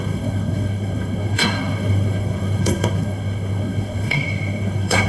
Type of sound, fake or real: fake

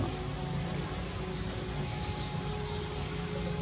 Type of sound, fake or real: real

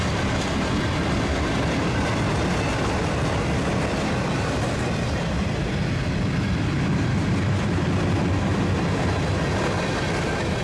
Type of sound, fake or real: real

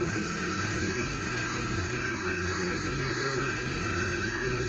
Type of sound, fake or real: fake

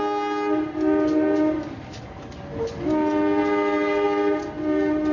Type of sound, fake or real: real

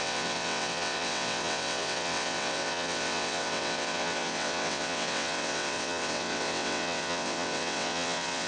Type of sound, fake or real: fake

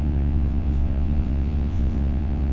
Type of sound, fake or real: fake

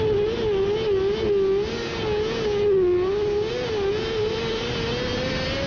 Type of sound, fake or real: real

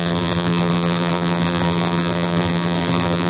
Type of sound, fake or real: fake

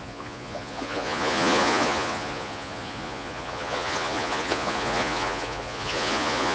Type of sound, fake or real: fake